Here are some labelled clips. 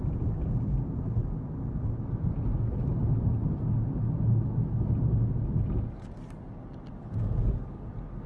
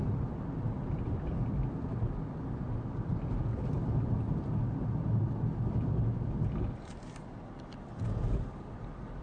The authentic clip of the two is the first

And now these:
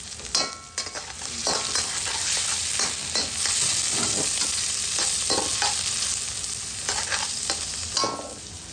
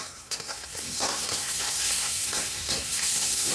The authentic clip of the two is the first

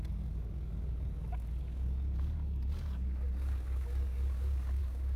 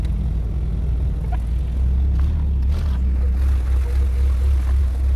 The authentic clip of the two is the second